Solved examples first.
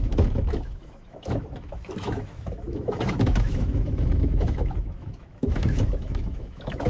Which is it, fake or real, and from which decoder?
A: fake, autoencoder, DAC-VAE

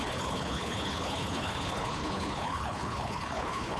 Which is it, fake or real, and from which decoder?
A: fake, codec, HILCodec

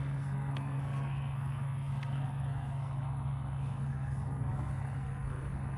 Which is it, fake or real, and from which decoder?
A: fake, codec, SNAC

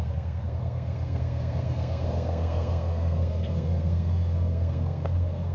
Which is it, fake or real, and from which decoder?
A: fake, codec, SNAC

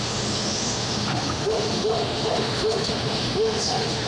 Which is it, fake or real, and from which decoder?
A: fake, autoencoder, DAC-VAE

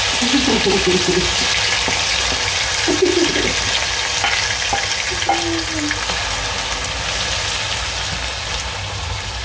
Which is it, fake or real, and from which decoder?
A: real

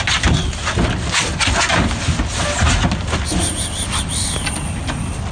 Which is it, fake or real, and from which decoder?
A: real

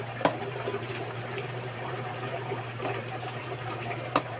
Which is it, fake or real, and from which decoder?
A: fake, vocoder, BigVGAN v2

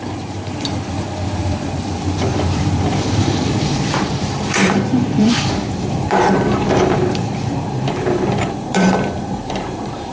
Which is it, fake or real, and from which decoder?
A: fake, vocoder, BigVGAN v2